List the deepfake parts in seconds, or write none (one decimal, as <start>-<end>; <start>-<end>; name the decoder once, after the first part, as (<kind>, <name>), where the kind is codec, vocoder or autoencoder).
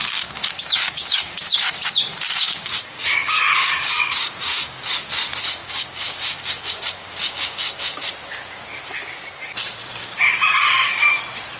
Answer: 0.0-4.9 (codec, DAC); 5.6-8.1; 10.0-11.2